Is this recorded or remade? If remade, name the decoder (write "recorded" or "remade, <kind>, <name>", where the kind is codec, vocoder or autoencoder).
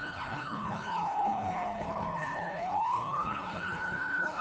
remade, codec, HILCodec